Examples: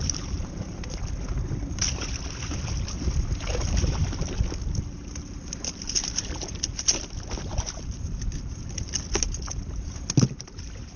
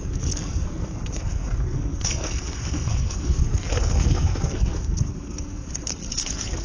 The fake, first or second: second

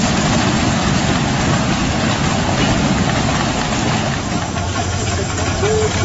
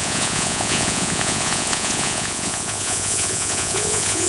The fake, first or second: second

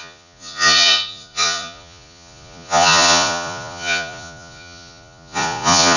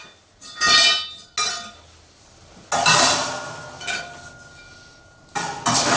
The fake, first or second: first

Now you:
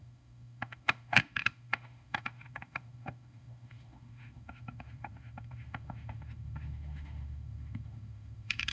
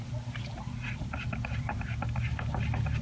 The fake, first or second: first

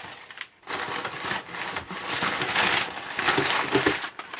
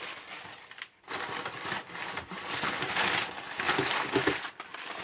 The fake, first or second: second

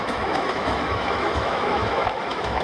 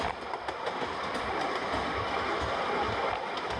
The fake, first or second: first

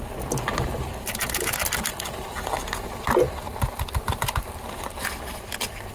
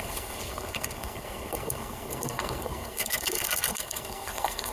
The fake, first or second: second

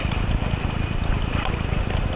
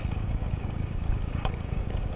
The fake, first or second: second